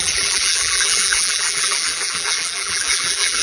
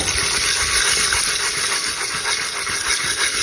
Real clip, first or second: second